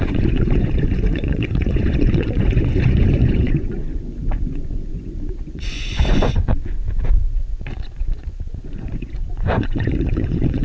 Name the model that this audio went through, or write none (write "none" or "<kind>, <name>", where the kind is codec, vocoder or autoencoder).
vocoder, Vocos